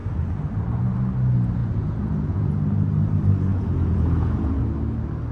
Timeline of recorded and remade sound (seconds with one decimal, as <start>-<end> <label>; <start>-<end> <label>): 0.0-1.6 recorded; 1.6-2.5 remade; 2.5-3.5 recorded; 3.5-4.6 remade; 4.6-5.3 recorded